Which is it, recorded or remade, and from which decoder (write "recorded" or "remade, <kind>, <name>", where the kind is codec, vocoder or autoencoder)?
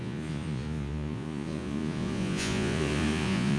remade, vocoder, Vocos